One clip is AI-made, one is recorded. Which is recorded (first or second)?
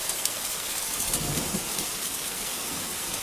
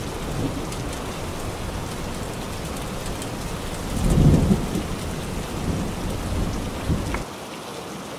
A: second